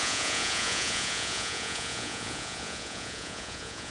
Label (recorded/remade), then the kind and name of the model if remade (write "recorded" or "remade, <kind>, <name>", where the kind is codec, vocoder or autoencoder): remade, vocoder, Vocos